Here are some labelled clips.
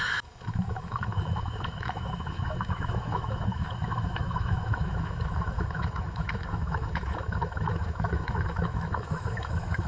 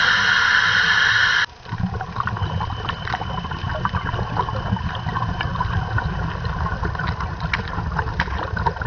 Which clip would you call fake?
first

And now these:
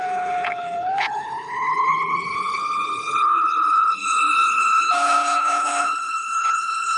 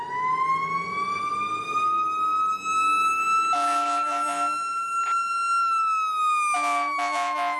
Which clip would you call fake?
first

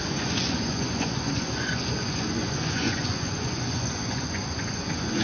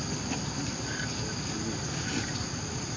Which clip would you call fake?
first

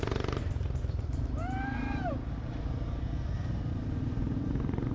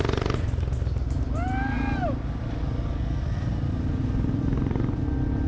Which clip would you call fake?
first